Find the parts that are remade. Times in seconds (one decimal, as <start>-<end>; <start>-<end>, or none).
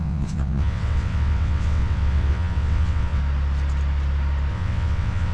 0.0-3.2; 4.5-5.3